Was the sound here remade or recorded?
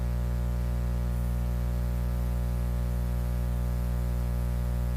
recorded